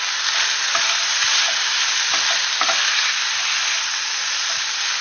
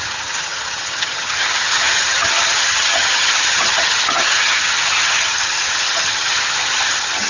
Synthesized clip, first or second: second